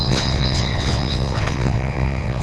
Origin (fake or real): fake